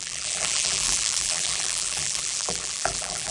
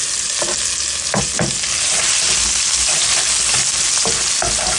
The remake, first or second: first